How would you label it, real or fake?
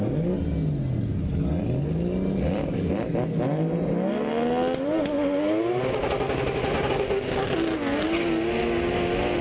real